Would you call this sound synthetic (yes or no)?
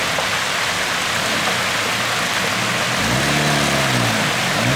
no